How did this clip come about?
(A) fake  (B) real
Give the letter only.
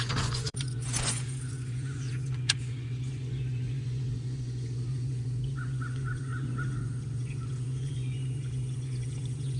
A